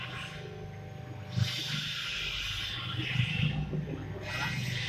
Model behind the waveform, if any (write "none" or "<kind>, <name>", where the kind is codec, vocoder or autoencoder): none